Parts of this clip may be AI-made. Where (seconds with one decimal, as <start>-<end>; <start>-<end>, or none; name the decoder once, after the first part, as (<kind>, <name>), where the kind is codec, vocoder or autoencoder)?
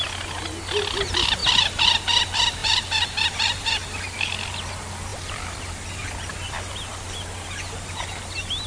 2.6-4.3 (vocoder, BigVGAN v2); 5.1-5.7